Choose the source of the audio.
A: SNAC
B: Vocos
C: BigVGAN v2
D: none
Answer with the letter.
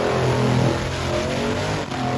D